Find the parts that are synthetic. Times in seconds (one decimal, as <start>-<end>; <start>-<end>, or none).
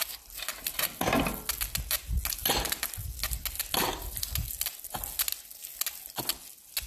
none